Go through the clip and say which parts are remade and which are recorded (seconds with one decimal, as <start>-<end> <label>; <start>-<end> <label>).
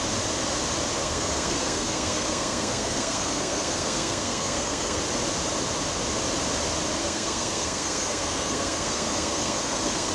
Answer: 0.0-1.0 recorded; 1.0-5.0 remade; 5.0-7.0 recorded; 7.0-10.1 remade